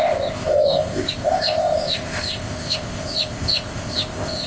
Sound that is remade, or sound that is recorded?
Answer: remade